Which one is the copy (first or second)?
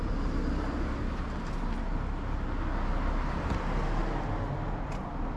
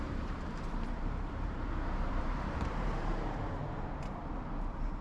second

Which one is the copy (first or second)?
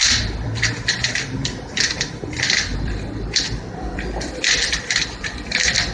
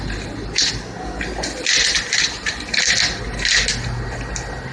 first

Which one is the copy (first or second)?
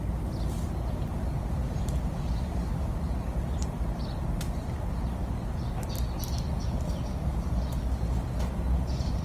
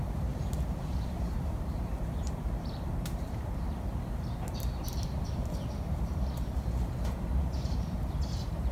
second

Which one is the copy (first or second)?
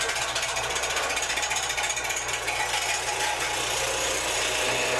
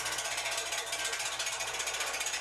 first